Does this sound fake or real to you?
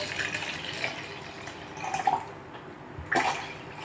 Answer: real